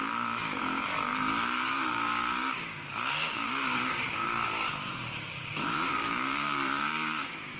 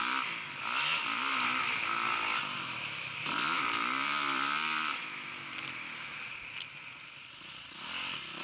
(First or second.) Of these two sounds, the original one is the second